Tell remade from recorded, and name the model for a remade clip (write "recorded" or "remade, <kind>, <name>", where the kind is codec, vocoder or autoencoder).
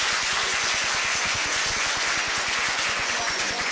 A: remade, vocoder, Vocos